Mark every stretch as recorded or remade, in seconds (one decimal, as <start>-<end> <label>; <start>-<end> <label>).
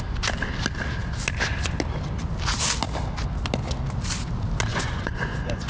0.0-4.7 recorded; 4.7-5.7 remade